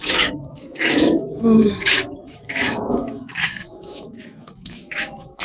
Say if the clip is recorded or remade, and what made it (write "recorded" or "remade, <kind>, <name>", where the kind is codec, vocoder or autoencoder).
remade, autoencoder, DAC-VAE